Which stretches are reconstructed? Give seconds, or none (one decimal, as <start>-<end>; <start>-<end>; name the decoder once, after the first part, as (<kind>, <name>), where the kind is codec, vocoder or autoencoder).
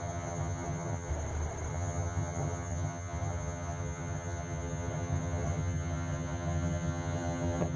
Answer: 0.0-1.1 (vocoder, HiFi-GAN); 1.7-7.8